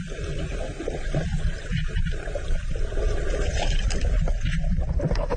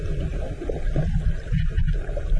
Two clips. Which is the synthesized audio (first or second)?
first